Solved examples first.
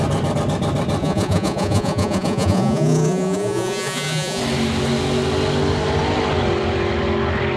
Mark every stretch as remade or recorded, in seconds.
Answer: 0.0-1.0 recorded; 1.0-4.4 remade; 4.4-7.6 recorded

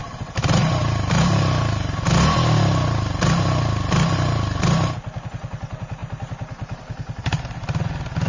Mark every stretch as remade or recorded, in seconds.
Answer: 0.0-8.3 recorded

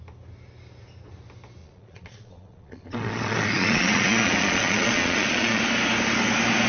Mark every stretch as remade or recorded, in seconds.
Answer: 0.0-1.6 recorded; 1.6-5.6 remade; 5.6-6.7 recorded

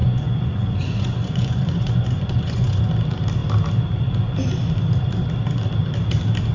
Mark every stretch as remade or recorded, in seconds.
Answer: 0.0-2.8 remade; 2.8-6.5 recorded

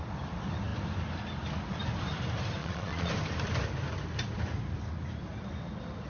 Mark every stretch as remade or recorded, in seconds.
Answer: 0.0-2.6 recorded; 2.6-3.1 remade; 3.1-6.1 recorded

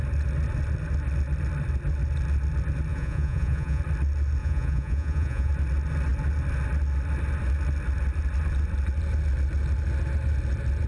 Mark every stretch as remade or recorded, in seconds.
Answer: 0.0-2.9 recorded; 2.9-3.8 remade; 3.8-4.4 recorded; 4.4-5.5 remade; 5.5-10.9 recorded